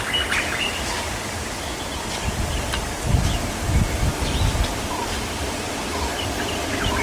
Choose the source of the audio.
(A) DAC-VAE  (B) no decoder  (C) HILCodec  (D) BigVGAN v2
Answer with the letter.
B